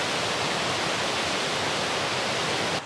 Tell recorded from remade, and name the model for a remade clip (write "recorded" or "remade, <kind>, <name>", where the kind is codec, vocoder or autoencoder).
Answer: recorded